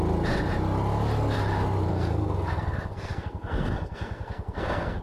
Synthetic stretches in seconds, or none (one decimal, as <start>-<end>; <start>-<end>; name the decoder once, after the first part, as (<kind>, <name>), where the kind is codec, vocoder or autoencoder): 1.9-5.0 (codec, SNAC)